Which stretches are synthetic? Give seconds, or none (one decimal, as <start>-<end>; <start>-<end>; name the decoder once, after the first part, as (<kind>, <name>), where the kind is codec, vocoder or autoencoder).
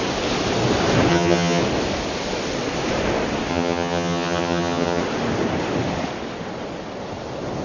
1.1-1.6 (vocoder, HiFi-GAN); 3.5-5.0